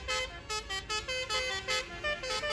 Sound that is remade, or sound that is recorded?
recorded